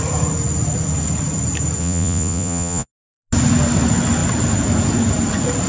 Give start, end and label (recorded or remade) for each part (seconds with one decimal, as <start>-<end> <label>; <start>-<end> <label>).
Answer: 0.0-1.8 recorded; 1.8-2.9 remade; 2.9-5.7 recorded